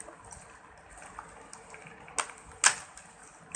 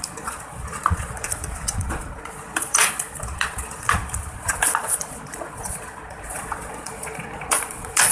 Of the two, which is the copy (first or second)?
second